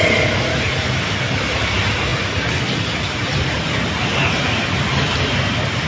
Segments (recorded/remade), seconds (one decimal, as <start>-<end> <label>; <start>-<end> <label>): 0.0-5.9 recorded